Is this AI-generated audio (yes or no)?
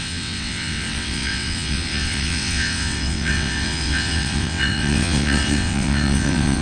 yes